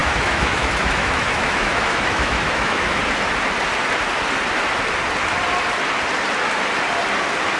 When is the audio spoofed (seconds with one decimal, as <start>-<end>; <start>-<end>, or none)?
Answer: 0.0-3.0